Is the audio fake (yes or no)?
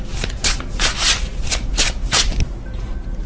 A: no